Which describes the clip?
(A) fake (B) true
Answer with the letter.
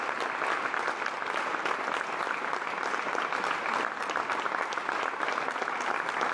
B